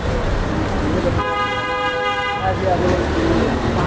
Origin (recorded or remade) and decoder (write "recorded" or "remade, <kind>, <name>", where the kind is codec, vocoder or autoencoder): recorded